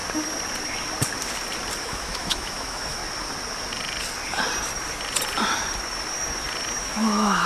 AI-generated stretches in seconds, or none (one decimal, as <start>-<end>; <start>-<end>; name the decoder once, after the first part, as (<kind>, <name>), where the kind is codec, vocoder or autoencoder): 1.8-3.0 (autoencoder, DAC-VAE); 6.8-7.5